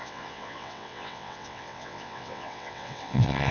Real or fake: fake